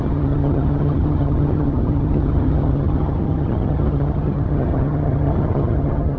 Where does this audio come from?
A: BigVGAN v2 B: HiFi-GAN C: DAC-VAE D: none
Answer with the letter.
B